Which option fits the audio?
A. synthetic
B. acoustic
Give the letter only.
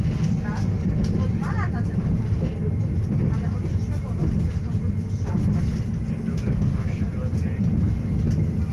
B